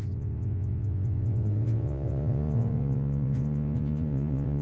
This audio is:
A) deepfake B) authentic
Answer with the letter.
A